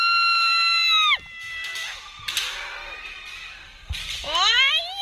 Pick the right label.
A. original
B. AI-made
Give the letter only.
A